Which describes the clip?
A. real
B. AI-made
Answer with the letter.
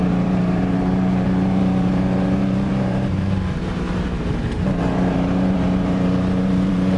B